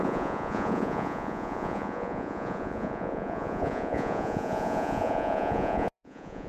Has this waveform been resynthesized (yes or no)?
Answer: yes